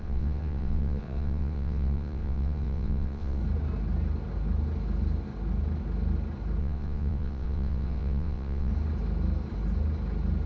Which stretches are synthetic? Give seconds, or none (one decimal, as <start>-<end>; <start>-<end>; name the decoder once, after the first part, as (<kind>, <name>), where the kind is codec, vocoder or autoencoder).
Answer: 0.0-3.4 (vocoder, WaveNeXt); 6.6-8.7